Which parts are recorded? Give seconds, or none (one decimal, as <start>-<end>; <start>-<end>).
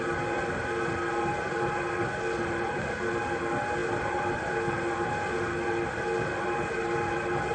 0.0-7.5